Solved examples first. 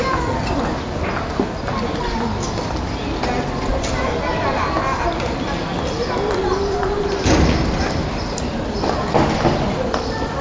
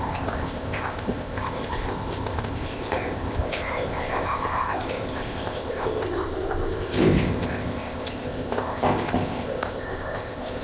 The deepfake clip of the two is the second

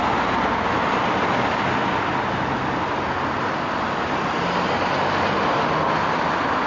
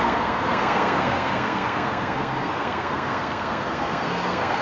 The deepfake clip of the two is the second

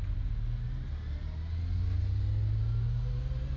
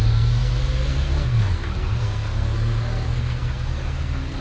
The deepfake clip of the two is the second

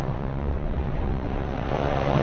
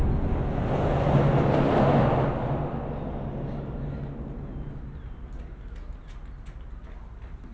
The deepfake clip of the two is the first